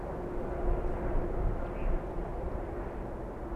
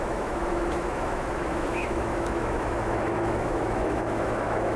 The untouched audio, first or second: first